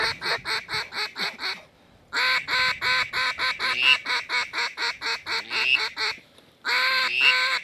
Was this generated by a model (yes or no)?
no